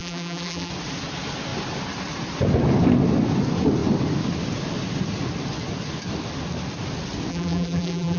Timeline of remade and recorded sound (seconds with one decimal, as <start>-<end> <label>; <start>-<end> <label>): 0.0-0.7 remade; 0.7-7.3 recorded; 7.3-8.2 remade